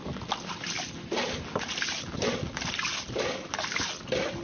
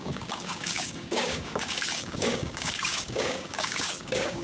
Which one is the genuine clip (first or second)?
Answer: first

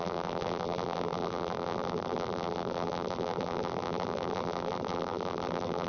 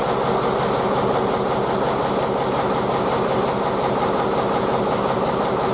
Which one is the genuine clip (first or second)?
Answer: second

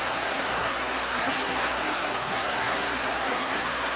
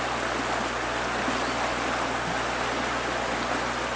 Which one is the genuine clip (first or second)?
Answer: second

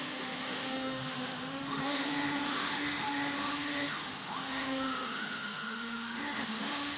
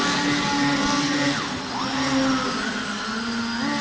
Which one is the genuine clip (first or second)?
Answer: second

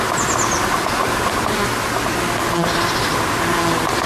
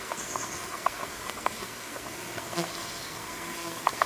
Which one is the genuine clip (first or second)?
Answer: first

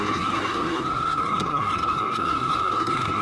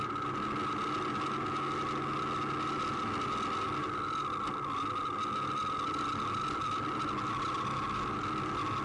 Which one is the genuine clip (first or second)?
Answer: second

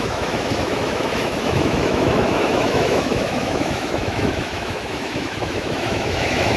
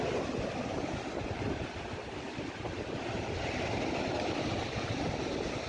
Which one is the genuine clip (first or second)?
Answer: second